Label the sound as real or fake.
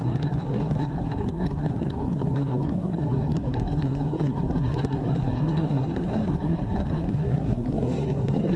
fake